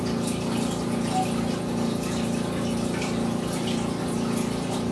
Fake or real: real